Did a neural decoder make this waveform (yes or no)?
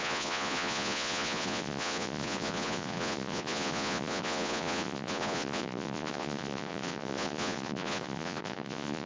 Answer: yes